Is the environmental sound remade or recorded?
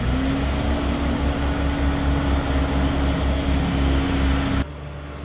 recorded